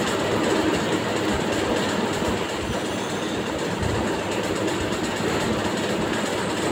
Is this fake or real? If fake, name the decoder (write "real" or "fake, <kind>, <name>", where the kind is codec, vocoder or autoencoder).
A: real